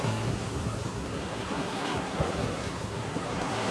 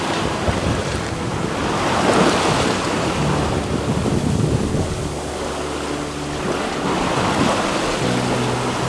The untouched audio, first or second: second